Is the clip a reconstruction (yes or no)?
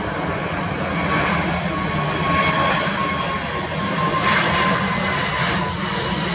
no